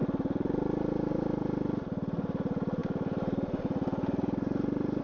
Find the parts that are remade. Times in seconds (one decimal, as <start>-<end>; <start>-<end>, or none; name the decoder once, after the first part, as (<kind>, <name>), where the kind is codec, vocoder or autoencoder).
none